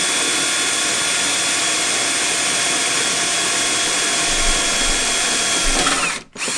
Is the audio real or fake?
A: real